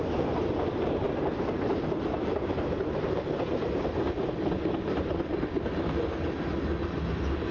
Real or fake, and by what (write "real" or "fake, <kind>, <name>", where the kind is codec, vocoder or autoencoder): real